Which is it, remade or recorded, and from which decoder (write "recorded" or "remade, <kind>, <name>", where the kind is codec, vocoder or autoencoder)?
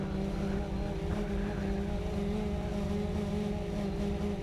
recorded